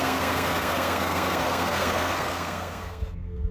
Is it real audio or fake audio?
fake